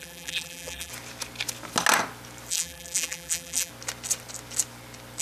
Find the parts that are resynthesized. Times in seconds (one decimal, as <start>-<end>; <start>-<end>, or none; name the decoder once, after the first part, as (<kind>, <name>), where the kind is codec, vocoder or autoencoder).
0.0-0.9 (vocoder, BigVGAN v2); 2.5-3.7